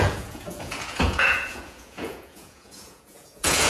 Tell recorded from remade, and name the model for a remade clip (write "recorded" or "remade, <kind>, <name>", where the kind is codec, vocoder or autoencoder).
remade, vocoder, Vocos